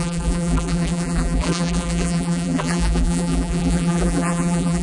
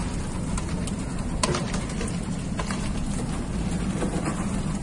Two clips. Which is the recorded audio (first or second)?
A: second